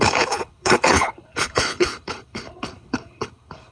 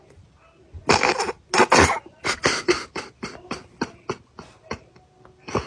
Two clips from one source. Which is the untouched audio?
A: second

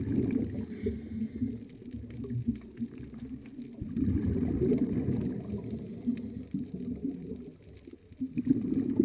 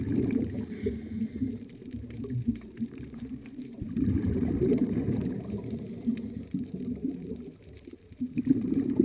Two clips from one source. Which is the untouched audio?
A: first